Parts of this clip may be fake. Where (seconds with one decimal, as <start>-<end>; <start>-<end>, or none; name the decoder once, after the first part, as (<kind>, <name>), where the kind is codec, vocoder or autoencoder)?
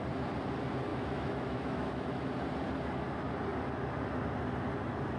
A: 0.9-2.3 (autoencoder, DAC-VAE)